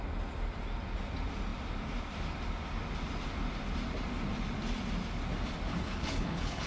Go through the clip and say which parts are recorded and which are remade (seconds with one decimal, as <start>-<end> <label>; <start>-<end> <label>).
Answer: 0.0-5.7 recorded; 5.7-6.7 remade